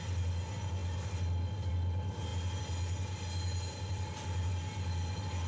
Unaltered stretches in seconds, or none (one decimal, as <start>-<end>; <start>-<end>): 0.0-5.5